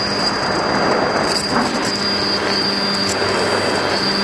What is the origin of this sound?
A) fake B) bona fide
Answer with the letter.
B